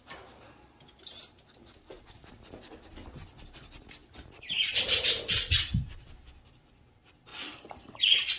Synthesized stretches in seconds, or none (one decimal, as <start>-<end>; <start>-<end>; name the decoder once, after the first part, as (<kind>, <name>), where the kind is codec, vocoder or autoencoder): 7.3-8.4 (vocoder, BigVGAN v2)